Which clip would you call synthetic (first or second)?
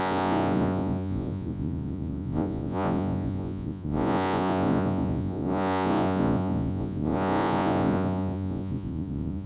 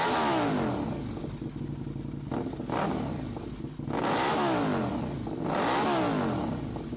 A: first